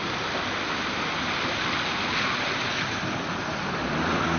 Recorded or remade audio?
recorded